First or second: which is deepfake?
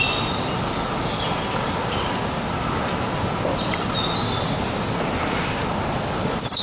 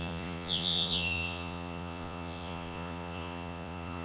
second